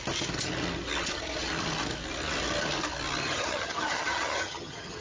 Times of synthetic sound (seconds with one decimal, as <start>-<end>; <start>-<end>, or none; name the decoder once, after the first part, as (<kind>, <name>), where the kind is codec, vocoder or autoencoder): 3.2-5.0 (vocoder, HiFi-GAN)